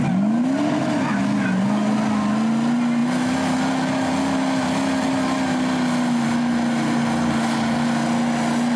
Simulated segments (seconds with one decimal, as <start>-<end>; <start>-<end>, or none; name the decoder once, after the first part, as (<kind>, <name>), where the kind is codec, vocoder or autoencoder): none